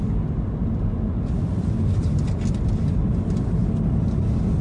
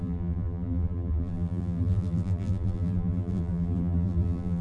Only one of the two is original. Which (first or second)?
first